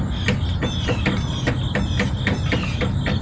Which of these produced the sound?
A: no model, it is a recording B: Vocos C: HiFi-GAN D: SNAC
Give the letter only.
A